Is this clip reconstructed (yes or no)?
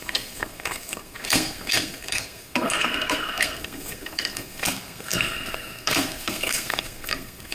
yes